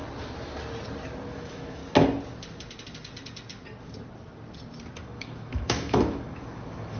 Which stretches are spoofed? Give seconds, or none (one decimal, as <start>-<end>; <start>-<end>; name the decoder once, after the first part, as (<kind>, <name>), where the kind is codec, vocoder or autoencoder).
1.3-1.8 (autoencoder, DAC-VAE); 5.0-7.0